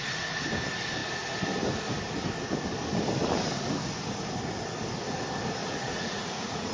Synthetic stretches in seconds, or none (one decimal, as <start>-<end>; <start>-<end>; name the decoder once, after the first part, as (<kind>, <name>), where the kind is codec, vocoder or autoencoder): 5.6-6.7 (vocoder, Vocos)